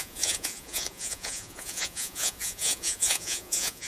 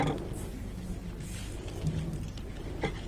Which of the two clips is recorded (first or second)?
second